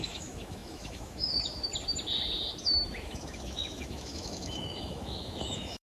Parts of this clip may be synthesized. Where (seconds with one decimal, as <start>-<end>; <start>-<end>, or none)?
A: 0.0-1.7; 2.6-5.9